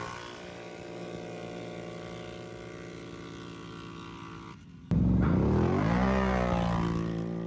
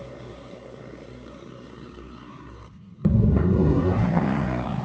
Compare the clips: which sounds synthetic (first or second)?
second